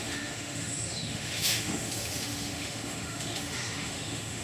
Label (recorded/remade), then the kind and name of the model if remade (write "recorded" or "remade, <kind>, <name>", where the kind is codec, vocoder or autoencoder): remade, autoencoder, DAC-VAE